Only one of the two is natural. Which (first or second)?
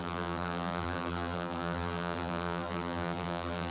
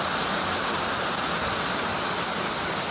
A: second